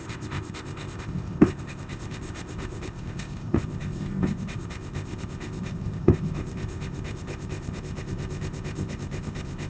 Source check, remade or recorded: remade